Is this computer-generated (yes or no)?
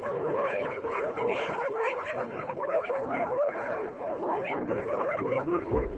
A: yes